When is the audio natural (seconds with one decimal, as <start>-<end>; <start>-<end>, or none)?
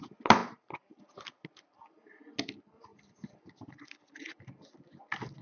0.0-5.4